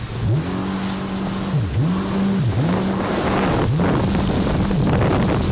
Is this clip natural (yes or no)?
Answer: yes